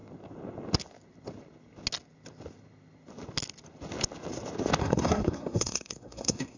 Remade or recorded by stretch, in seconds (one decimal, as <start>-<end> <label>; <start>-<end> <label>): 0.0-4.8 recorded; 4.8-6.6 remade